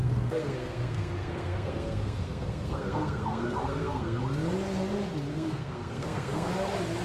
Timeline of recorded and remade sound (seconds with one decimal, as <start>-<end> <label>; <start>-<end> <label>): 0.0-4.2 remade; 4.2-5.3 recorded; 5.3-6.5 remade; 6.5-7.0 recorded

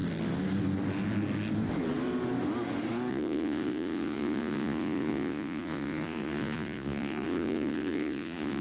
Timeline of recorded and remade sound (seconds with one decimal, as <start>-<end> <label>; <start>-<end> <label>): 0.0-3.1 recorded; 3.1-8.6 remade

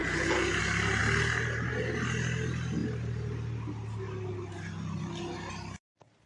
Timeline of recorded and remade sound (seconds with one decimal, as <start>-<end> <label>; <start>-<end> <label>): 0.0-0.6 remade; 0.6-6.3 recorded

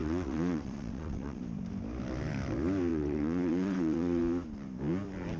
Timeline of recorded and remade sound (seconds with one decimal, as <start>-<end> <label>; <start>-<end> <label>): 0.0-1.4 remade; 1.4-2.9 recorded; 2.9-4.2 remade; 4.2-5.4 recorded

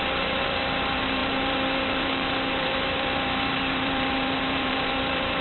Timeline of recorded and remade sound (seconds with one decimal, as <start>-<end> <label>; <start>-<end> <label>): 0.0-5.4 remade

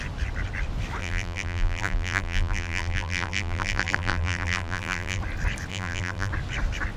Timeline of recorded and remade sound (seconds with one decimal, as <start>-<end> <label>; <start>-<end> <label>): 0.0-1.0 recorded; 1.0-5.2 remade; 5.2-5.7 recorded; 5.7-6.3 remade; 6.3-7.0 recorded